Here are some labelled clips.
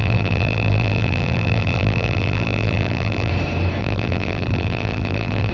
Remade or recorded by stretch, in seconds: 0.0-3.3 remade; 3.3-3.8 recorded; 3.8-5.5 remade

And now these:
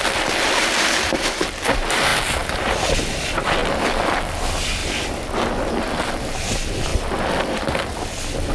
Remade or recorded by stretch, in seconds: 0.0-2.1 remade; 2.1-2.9 recorded; 2.9-8.5 remade

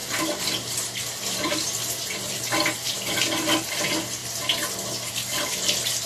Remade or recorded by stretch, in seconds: 0.0-3.7 remade; 3.7-6.1 recorded

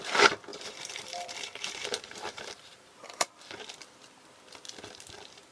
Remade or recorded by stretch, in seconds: 0.0-0.5 recorded; 0.5-3.6 remade; 3.6-5.5 recorded

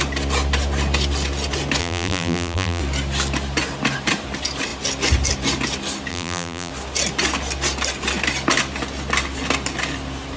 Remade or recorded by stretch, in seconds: 0.0-1.8 recorded; 1.8-2.8 remade; 2.8-6.1 recorded; 6.1-6.7 remade; 6.7-10.4 recorded